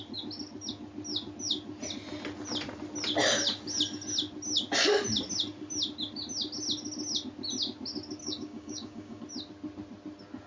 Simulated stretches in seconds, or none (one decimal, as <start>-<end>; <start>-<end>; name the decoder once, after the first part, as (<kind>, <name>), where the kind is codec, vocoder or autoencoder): 8.2-9.2 (codec, DAC)